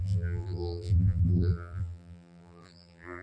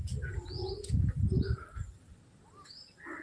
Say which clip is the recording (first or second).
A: second